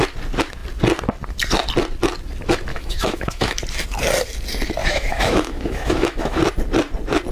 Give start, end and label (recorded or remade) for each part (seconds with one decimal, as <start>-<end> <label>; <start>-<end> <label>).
0.0-2.7 recorded; 2.7-3.6 remade; 3.6-4.8 recorded; 4.8-6.4 remade; 6.4-7.3 recorded